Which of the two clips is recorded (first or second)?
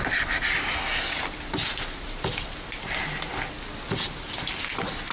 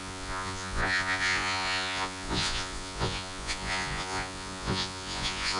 first